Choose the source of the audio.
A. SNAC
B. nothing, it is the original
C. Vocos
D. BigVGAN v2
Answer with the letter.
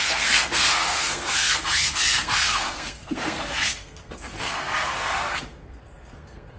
A